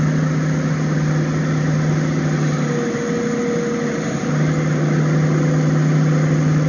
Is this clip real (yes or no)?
yes